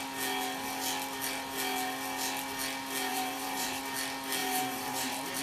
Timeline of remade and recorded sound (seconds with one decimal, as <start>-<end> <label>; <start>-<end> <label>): 0.0-3.1 recorded; 3.1-3.8 remade; 3.8-4.4 recorded; 4.4-5.4 remade

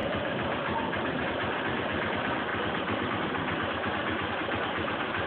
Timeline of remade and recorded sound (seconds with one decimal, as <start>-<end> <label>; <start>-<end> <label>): 0.0-2.5 recorded; 2.5-4.3 remade; 4.3-5.3 recorded

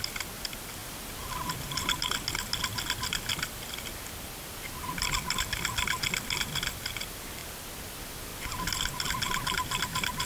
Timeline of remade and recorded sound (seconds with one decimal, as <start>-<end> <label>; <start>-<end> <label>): 0.0-0.8 recorded; 0.8-1.9 remade; 1.9-8.3 recorded; 8.3-10.3 remade

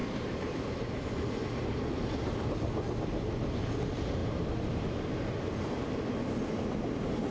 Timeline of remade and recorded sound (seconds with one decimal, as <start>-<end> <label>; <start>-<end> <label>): 0.0-1.1 remade; 1.1-4.2 recorded; 4.2-4.8 remade; 4.8-7.3 recorded

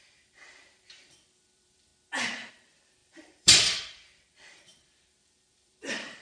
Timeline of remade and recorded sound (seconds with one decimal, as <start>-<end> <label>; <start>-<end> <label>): 0.0-1.9 remade; 1.9-2.5 recorded; 2.5-6.2 remade

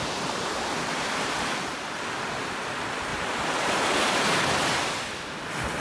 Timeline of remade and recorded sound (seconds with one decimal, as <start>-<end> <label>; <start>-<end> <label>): 0.0-1.1 remade; 1.1-3.1 recorded; 3.1-4.4 remade; 4.4-5.8 recorded

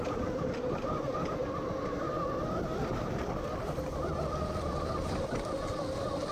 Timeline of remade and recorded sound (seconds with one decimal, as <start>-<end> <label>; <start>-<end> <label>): 0.0-1.4 remade; 1.4-2.0 recorded; 2.0-6.3 remade